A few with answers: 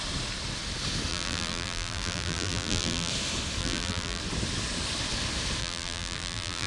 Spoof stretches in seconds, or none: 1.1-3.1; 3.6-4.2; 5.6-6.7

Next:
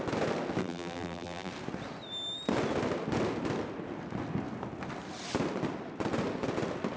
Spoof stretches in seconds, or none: 0.6-1.5

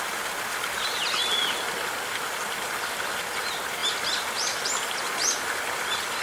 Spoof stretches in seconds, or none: none

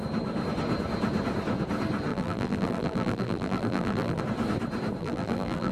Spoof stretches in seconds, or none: 2.1-4.2; 5.0-5.7

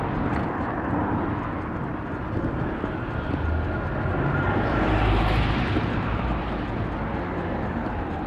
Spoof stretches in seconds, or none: 3.9-6.6

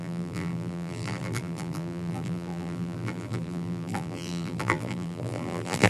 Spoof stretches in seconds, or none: 0.0-5.9

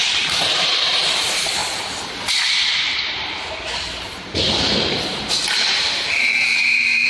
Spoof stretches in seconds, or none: 0.0-1.6; 5.9-7.1

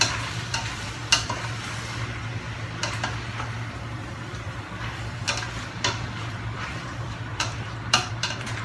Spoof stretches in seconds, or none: 0.0-1.0; 3.4-5.2; 6.3-8.6